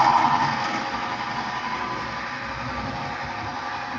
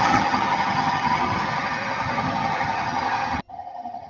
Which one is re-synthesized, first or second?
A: second